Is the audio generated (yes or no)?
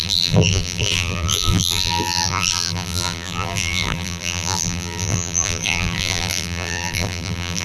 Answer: yes